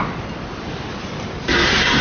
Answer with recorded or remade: recorded